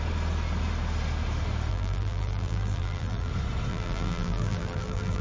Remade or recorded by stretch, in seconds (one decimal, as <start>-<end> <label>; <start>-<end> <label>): 0.0-1.7 recorded; 1.7-3.3 remade; 3.3-3.7 recorded; 3.7-5.2 remade